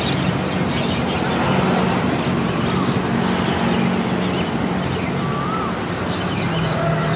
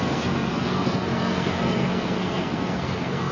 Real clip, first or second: first